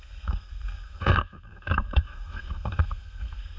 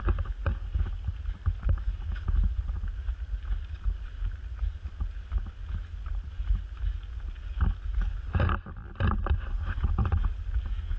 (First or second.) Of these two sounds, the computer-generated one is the first